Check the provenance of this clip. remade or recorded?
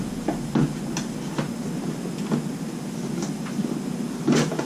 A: recorded